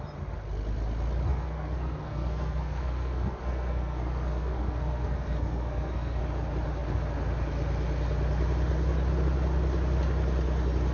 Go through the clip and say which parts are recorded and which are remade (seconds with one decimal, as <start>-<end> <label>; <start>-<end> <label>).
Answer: 0.0-1.3 recorded; 1.3-6.2 remade; 6.2-10.9 recorded